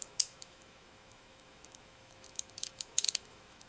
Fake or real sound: fake